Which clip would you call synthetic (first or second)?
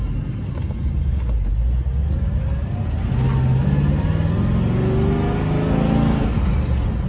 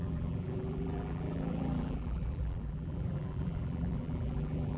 second